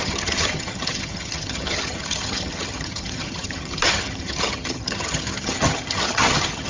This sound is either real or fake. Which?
fake